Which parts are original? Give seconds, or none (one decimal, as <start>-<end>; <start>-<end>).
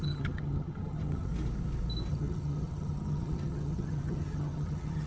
1.3-2.1